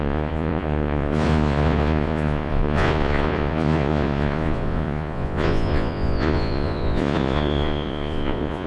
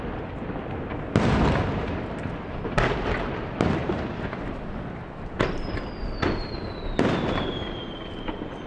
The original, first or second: second